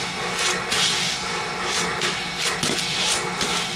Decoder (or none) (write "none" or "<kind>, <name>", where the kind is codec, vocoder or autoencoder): none